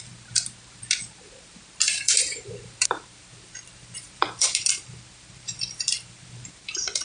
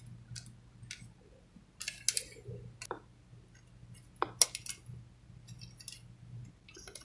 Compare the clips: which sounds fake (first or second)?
first